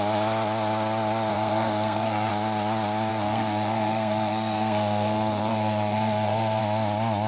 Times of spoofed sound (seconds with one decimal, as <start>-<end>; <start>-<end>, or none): 1.3-2.3; 3.1-6.6